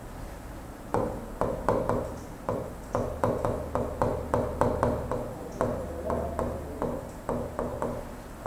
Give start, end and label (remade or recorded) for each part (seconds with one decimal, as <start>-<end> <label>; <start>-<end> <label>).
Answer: 0.0-8.5 recorded